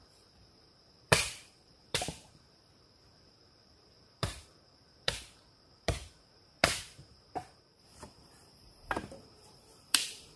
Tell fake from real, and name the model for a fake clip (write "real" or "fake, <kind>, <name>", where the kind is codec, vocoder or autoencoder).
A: fake, vocoder, BigVGAN v2